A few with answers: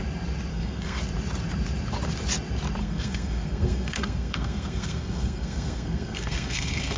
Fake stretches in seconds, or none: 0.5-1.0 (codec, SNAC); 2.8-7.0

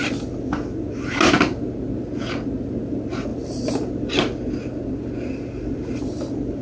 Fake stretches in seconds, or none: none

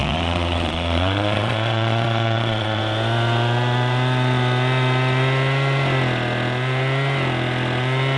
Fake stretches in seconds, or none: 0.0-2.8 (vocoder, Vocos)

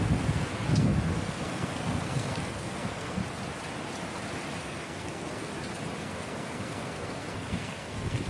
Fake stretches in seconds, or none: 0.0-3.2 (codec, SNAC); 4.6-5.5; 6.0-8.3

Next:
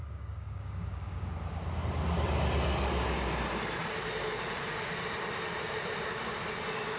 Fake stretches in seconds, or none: 0.0-1.3 (codec, DAC)

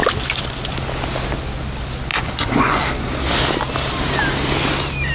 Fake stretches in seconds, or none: 2.1-2.8 (vocoder, Vocos)